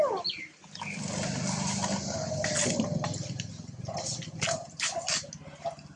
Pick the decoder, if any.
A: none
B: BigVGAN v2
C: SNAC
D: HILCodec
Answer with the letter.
A